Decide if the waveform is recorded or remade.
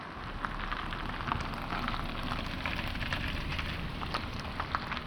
recorded